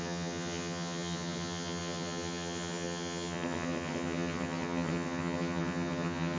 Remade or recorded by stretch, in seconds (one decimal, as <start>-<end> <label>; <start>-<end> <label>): 0.0-6.4 remade